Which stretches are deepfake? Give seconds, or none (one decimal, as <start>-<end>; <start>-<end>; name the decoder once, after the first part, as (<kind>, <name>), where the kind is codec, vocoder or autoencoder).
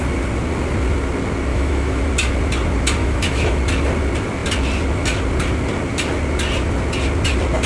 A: 1.5-2.0 (autoencoder, DAC-VAE); 3.0-3.6